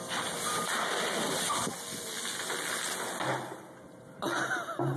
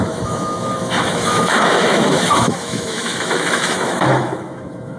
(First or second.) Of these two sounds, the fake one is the second